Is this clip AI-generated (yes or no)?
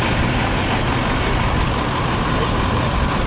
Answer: no